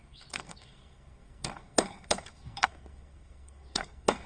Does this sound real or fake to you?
fake